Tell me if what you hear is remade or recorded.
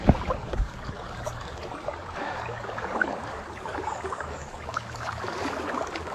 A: remade